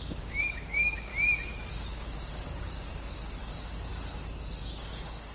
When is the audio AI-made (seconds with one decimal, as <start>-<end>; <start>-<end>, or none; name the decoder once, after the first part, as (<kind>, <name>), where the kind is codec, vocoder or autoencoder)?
0.0-1.1 (codec, DAC); 1.7-2.9; 3.4-3.9; 4.6-5.3